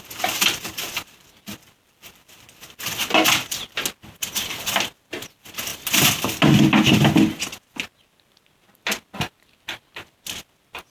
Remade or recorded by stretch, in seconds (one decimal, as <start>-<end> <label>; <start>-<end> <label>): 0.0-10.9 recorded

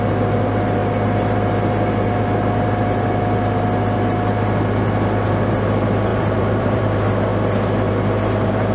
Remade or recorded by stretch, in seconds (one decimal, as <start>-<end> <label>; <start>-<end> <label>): 0.0-6.1 recorded; 6.1-6.8 remade; 6.8-8.7 recorded

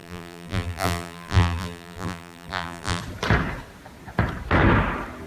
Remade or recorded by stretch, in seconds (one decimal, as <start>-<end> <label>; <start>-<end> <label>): 0.0-3.0 remade; 3.0-5.3 recorded